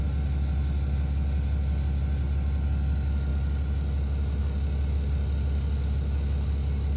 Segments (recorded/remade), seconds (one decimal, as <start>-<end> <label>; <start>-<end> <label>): 0.0-7.0 recorded